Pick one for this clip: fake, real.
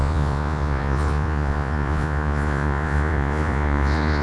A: fake